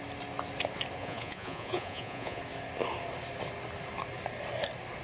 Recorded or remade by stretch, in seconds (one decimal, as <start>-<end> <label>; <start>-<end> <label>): 0.0-1.0 recorded; 1.0-2.4 remade; 2.4-5.0 recorded